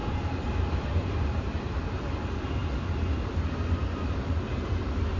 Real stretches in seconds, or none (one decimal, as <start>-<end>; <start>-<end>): 1.8-5.2